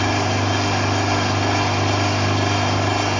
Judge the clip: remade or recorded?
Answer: recorded